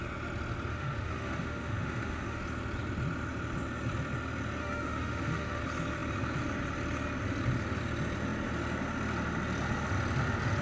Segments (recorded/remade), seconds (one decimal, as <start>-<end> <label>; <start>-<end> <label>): 0.0-0.7 recorded; 0.7-2.4 remade; 2.4-4.6 recorded; 4.6-5.6 remade; 5.6-10.6 recorded